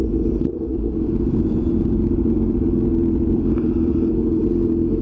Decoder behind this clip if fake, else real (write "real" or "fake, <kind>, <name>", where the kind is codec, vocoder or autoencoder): fake, vocoder, BigVGAN v2